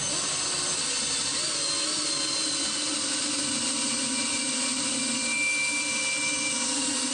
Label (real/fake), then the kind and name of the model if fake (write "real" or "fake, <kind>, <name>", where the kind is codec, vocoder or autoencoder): real